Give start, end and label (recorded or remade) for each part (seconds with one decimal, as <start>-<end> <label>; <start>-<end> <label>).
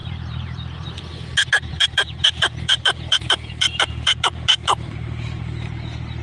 0.0-1.0 remade; 1.0-1.7 recorded; 1.7-5.4 remade; 5.4-6.2 recorded